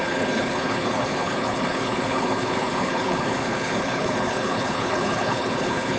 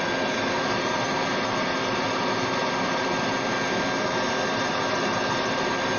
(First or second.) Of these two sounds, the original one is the second